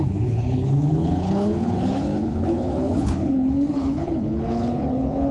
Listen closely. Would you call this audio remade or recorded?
remade